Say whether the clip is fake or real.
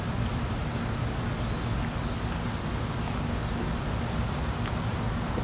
real